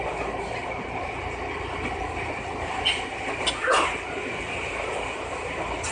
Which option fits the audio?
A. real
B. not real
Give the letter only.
A